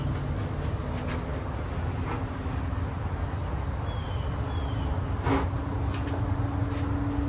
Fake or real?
real